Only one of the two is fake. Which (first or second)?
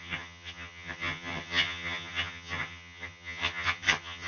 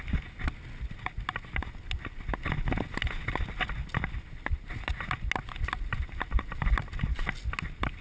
first